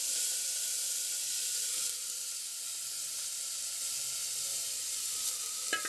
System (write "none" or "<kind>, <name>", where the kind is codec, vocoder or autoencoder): none